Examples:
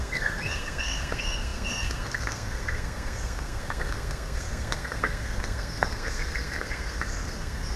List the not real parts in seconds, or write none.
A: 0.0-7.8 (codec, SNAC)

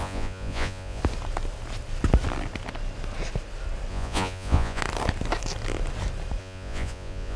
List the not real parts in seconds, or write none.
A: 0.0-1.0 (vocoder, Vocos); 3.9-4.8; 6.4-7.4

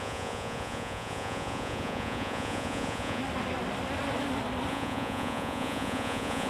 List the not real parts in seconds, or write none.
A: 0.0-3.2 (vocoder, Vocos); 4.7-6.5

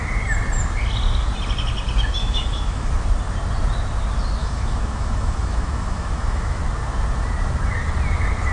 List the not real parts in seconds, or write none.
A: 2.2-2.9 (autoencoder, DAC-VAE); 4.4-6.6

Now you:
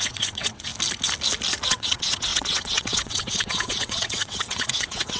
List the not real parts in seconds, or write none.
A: 0.0-0.7 (vocoder, WaveNeXt); 1.7-5.2

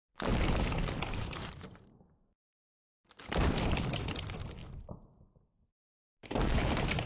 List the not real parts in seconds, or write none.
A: 0.0-4.6 (vocoder, BigVGAN v2); 5.3-7.1

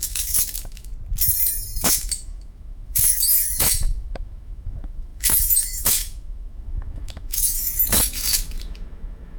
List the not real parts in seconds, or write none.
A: 0.0-0.9 (autoencoder, DAC-VAE); 1.8-9.4